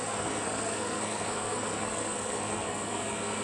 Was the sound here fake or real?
fake